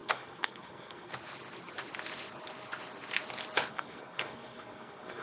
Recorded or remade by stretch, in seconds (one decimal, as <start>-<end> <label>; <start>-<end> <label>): 0.0-1.1 remade; 1.1-3.7 recorded; 3.7-5.2 remade